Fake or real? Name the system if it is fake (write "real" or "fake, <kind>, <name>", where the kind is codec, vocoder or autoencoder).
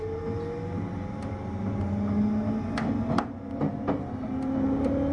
real